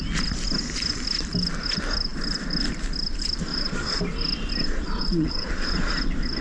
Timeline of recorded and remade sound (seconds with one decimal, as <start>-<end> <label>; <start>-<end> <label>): 0.0-3.5 recorded; 3.5-4.0 remade; 4.0-4.6 recorded; 4.6-5.9 remade; 5.9-6.4 recorded